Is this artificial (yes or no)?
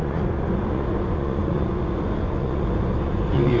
yes